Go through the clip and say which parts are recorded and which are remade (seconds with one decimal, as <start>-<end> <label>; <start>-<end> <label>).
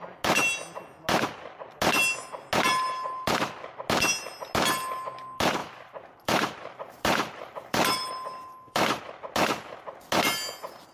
0.0-5.6 recorded; 5.6-9.0 remade; 9.0-10.9 recorded